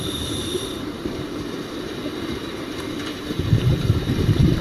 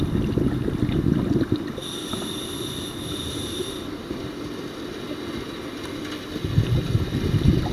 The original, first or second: second